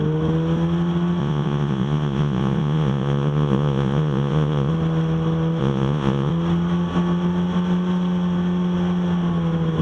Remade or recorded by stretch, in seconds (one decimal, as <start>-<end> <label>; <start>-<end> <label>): 0.0-1.2 recorded; 1.2-4.7 remade; 4.7-5.6 recorded; 5.6-6.3 remade; 6.3-9.8 recorded